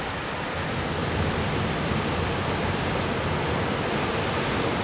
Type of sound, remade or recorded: recorded